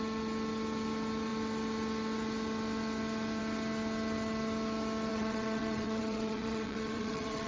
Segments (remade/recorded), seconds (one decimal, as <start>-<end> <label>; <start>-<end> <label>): 0.0-5.1 recorded; 5.1-7.5 remade